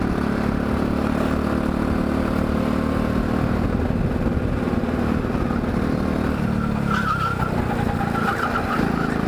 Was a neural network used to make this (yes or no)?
no